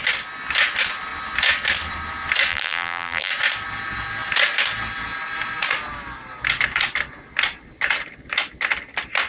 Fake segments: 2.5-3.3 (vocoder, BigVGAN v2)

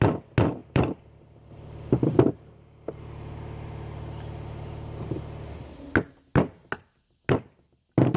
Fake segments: 0.6-5.0 (vocoder, BigVGAN v2)

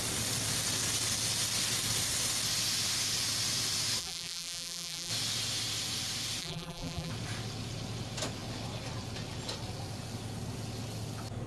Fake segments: 4.0-5.1 (vocoder, BigVGAN v2); 6.4-7.1

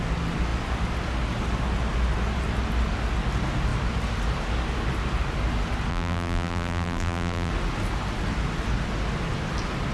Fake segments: 5.9-7.5 (vocoder, BigVGAN v2)

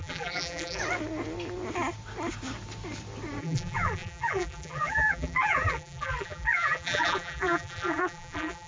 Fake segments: 0.0-0.8 (vocoder, BigVGAN v2); 3.4-8.7

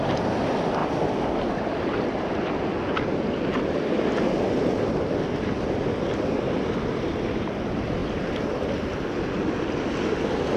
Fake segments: none